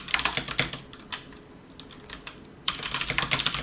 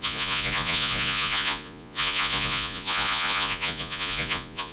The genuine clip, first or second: first